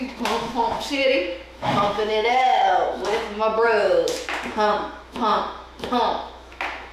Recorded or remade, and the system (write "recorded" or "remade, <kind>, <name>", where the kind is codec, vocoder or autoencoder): remade, autoencoder, DAC-VAE